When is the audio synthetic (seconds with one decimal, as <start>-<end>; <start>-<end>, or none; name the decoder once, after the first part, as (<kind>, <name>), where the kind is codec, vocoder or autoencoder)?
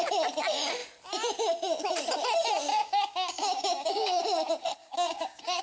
2.7-4.2 (codec, DAC); 4.8-5.6